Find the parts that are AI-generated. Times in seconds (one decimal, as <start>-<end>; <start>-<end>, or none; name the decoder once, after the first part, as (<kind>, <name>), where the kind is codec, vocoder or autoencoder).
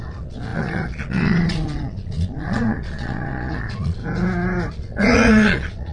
0.0-4.0 (vocoder, Vocos); 4.7-5.9